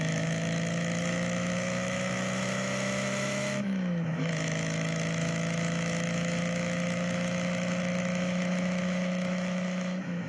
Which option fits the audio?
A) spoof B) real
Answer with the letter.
A